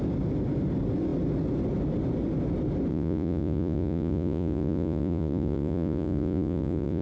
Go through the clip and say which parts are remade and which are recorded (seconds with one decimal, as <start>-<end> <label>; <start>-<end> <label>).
0.0-2.9 recorded; 2.9-7.0 remade